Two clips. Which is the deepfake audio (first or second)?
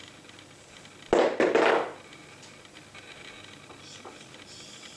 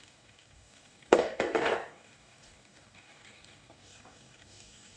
second